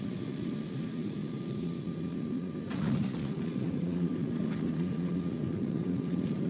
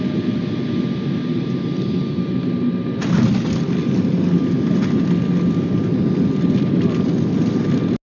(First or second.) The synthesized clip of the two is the first